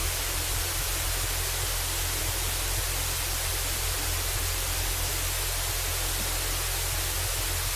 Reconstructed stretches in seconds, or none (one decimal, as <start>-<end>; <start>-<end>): 0.0-1.1; 2.2-5.1